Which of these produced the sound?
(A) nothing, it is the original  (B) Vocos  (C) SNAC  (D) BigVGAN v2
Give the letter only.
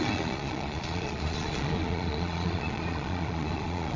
B